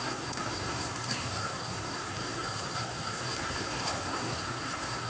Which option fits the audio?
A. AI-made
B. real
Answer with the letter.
A